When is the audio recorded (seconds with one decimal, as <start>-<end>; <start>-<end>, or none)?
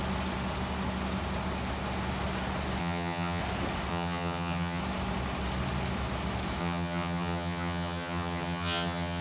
0.0-2.8; 3.4-3.9; 4.8-6.6